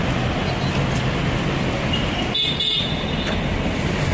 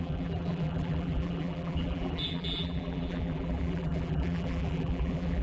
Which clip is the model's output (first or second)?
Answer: second